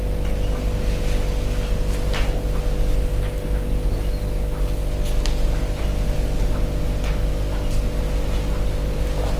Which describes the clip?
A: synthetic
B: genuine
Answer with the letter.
B